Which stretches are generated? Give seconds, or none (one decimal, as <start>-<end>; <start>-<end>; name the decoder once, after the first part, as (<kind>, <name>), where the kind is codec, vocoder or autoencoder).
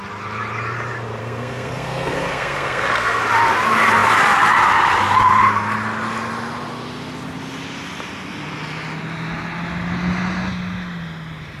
1.2-3.2 (codec, SNAC)